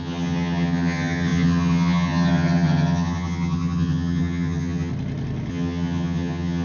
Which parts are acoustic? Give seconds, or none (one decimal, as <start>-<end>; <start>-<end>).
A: 4.9-5.5